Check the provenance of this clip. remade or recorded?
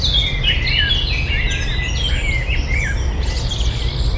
recorded